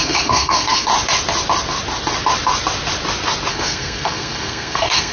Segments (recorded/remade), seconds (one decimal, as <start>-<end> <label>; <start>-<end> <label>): 0.0-0.9 remade; 0.9-3.5 recorded; 3.5-5.1 remade